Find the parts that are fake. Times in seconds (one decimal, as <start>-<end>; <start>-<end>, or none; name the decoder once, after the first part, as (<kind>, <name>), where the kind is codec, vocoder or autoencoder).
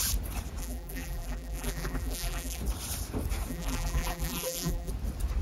0.6-2.6 (vocoder, BigVGAN v2); 3.5-4.9